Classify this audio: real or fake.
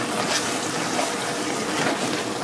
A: real